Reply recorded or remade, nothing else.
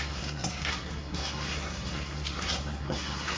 remade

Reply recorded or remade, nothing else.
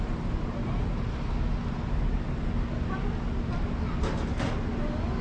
recorded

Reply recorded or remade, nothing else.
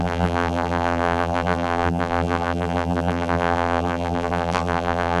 remade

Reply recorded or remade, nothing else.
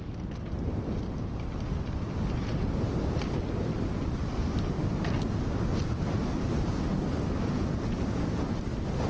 recorded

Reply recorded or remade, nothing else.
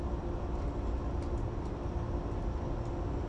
recorded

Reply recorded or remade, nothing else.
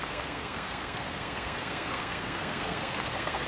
remade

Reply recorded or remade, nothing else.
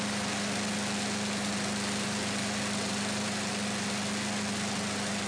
recorded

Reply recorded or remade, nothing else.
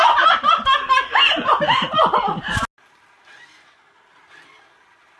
recorded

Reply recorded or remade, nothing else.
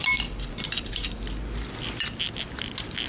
recorded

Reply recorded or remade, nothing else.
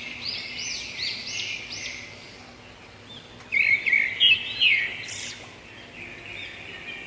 recorded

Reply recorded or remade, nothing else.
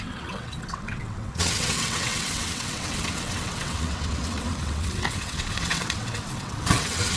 remade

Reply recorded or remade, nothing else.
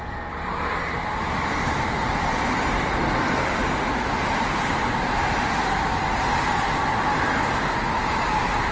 recorded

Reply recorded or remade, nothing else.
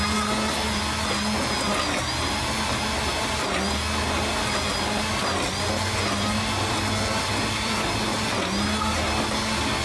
recorded